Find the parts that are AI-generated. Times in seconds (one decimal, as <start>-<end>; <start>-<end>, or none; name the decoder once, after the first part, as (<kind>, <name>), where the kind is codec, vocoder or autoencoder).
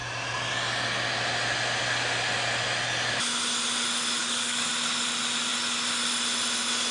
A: 4.2-4.7 (codec, DAC)